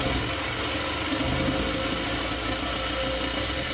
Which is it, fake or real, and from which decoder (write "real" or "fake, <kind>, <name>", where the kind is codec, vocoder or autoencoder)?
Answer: real